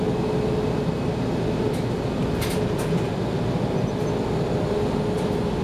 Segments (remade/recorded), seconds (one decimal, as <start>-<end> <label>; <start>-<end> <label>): 0.0-5.6 recorded